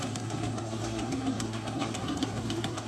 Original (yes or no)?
no